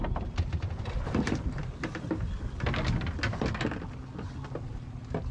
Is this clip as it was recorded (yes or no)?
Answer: yes